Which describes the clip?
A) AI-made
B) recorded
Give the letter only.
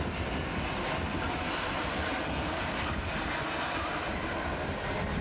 B